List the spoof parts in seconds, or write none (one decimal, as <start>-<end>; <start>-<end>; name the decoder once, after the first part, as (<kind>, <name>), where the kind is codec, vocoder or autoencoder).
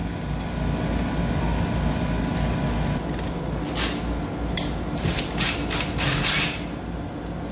none